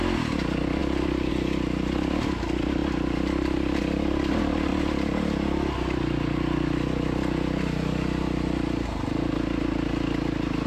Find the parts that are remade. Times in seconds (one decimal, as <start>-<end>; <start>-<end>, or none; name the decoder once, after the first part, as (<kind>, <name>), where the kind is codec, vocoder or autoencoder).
none